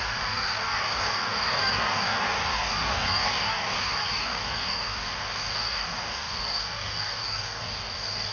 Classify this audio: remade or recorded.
remade